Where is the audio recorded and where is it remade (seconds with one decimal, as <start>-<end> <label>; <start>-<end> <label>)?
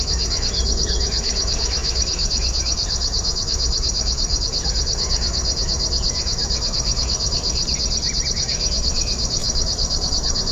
0.0-7.6 remade; 7.6-8.3 recorded; 8.3-10.5 remade